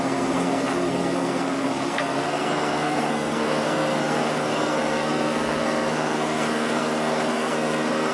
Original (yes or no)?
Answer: no